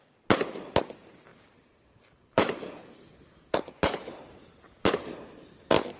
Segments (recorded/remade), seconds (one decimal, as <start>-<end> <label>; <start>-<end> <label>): 0.0-1.3 recorded; 1.3-4.9 remade; 4.9-6.0 recorded